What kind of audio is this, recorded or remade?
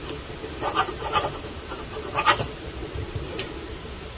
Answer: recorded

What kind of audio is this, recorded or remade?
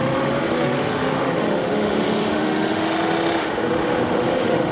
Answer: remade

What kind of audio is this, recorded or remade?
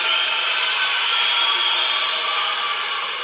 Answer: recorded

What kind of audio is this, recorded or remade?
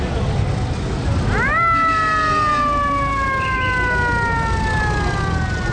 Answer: recorded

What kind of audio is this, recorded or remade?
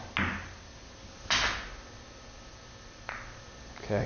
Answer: recorded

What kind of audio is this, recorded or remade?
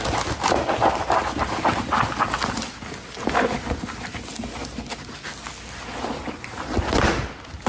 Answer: recorded